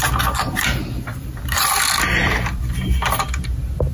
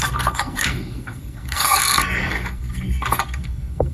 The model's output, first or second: second